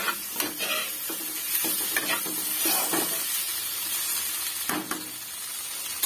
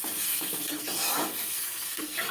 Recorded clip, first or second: first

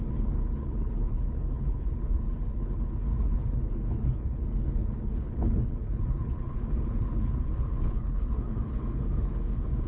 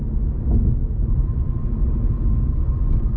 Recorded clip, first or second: second